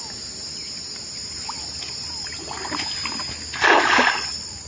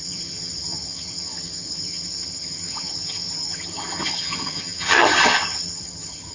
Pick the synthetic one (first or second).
second